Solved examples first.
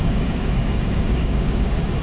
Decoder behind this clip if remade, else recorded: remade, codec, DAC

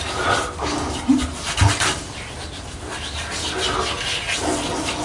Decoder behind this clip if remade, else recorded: recorded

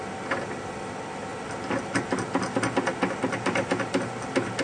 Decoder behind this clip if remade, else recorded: recorded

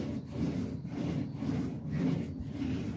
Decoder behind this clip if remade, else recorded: recorded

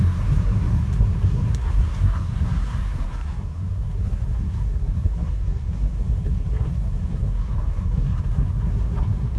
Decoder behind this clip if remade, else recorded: remade, codec, SNAC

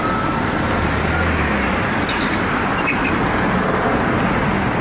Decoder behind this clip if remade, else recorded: recorded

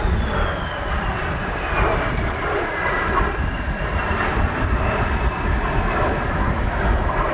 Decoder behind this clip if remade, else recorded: recorded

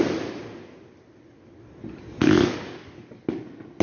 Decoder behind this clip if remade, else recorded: recorded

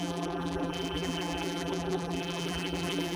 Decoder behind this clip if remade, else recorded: remade, vocoder, BigVGAN v2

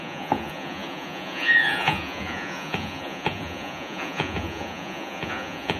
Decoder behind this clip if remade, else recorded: remade, vocoder, Vocos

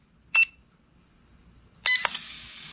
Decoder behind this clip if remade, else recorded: recorded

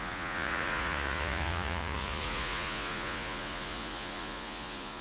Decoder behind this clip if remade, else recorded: remade, vocoder, Vocos